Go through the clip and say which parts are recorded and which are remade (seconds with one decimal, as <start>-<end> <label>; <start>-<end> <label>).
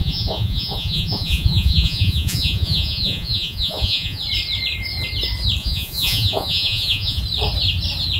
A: 0.0-4.2 remade; 4.2-5.6 recorded; 5.6-7.2 remade; 7.2-8.2 recorded